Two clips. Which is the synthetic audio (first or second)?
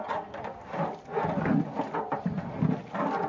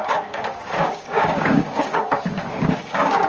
second